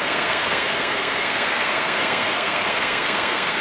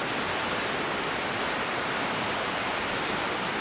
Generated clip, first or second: first